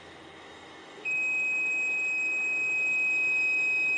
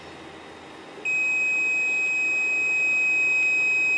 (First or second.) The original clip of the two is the second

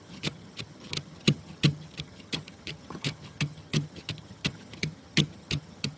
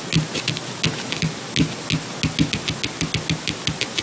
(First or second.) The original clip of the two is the second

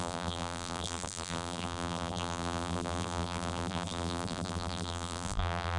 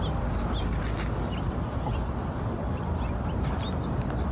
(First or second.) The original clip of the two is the second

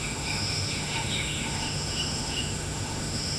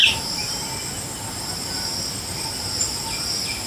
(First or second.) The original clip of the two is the second